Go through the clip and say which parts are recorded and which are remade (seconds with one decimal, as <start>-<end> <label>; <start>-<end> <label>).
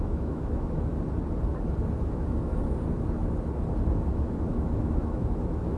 0.0-0.9 remade; 0.9-1.9 recorded; 1.9-2.5 remade; 2.5-4.4 recorded; 4.4-5.8 remade